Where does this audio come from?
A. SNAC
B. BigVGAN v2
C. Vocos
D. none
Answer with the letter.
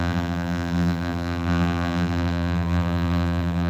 B